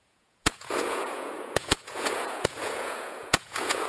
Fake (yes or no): yes